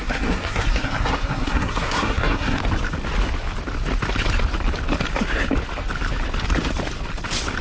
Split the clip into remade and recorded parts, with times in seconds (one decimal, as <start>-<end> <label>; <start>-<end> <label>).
0.0-2.6 remade; 2.6-7.6 recorded